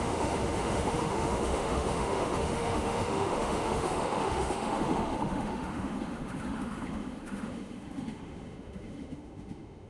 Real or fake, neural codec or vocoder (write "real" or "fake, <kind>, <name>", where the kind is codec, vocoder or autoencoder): fake, autoencoder, DAC-VAE